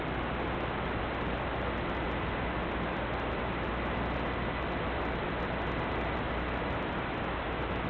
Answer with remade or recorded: remade